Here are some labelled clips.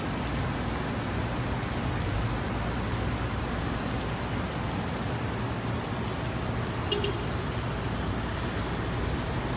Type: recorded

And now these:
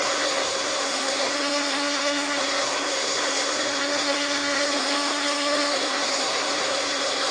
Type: remade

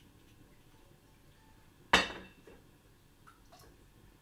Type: recorded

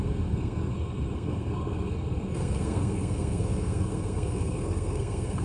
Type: remade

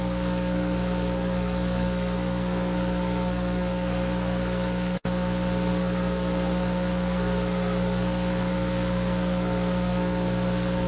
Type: remade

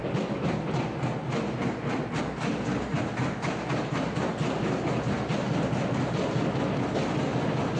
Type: recorded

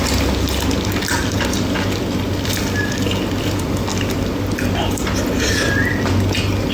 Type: recorded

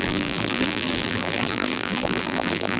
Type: remade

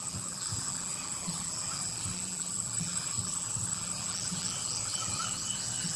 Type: remade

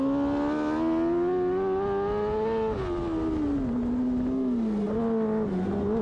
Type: recorded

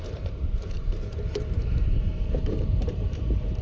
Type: remade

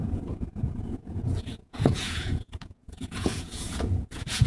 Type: remade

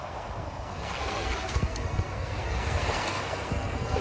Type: remade